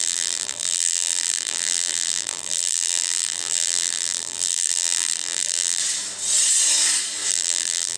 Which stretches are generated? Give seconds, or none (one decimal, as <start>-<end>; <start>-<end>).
0.0-5.8; 7.3-8.0